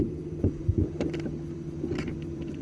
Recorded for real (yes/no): no